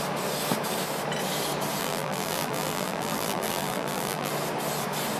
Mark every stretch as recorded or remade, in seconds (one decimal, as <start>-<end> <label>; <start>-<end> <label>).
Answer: 0.0-1.8 recorded; 1.8-4.3 remade; 4.3-5.2 recorded